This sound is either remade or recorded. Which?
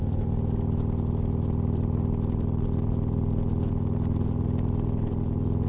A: recorded